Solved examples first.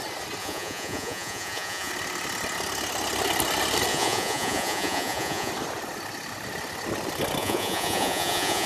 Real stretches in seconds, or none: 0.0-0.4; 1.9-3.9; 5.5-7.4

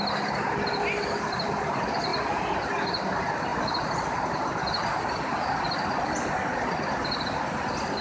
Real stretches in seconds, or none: 0.0-8.0

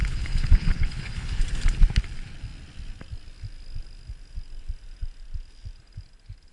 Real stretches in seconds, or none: 1.4-6.5

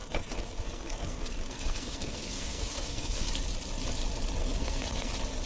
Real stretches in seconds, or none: 3.3-4.4; 5.1-5.5